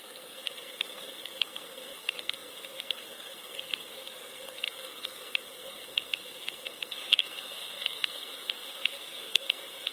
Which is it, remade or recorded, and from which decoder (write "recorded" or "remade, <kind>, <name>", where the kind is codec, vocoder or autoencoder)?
remade, codec, SNAC